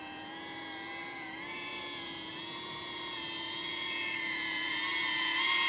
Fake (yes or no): yes